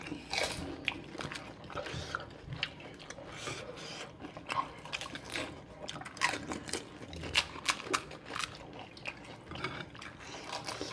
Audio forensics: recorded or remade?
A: recorded